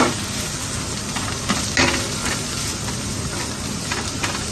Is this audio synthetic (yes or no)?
no